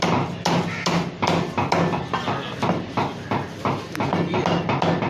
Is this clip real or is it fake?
real